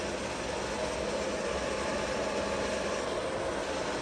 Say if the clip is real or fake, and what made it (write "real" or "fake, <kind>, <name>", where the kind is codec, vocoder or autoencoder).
real